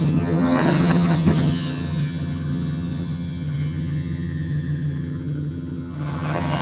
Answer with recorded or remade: remade